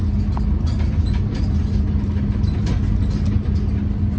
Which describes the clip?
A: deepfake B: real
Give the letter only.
B